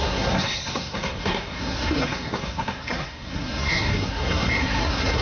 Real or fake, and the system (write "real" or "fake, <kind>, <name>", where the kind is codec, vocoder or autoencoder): fake, codec, SNAC